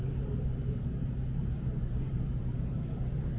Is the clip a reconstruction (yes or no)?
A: yes